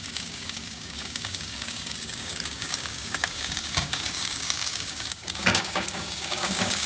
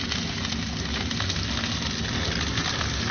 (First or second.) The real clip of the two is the second